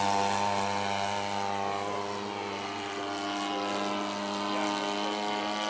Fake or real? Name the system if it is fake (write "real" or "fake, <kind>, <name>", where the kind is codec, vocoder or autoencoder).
real